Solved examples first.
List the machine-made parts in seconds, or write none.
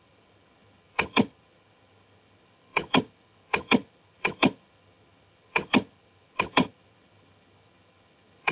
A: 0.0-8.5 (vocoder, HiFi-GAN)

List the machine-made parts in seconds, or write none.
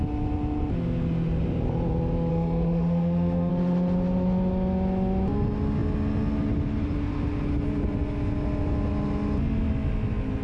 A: 2.3-3.5 (autoencoder, DAC-VAE)